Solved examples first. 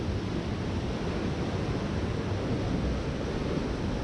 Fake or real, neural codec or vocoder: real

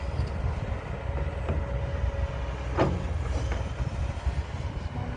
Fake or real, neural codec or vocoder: real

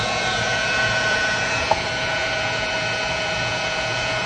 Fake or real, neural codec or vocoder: fake, vocoder, Vocos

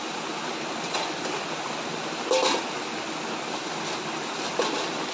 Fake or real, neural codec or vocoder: real